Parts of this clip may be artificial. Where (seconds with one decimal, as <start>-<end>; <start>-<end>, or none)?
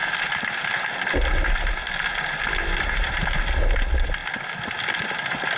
none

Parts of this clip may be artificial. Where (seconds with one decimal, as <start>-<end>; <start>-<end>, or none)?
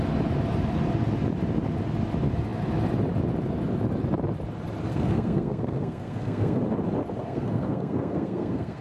4.9-6.6; 7.2-8.8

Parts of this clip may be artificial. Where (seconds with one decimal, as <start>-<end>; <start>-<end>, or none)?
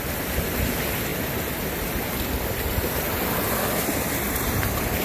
1.1-4.1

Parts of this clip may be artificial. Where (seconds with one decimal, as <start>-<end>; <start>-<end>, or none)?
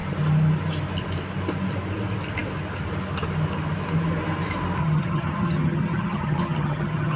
4.8-7.2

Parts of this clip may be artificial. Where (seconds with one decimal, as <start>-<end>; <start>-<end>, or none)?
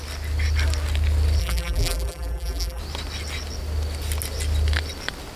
1.4-2.8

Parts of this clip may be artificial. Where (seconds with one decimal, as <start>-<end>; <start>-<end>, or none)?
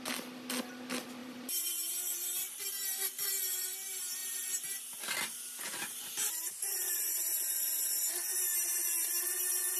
1.2-2.6; 6.2-7.8